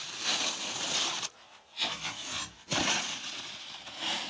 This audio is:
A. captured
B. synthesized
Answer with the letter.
A